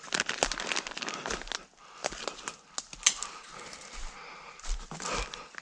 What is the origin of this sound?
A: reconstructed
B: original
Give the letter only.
B